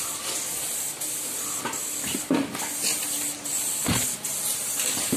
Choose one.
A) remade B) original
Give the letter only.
B